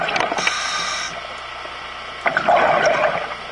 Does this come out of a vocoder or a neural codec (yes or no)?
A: no